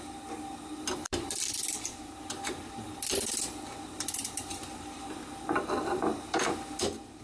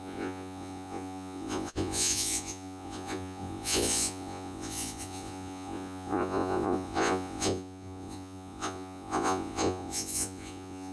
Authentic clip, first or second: first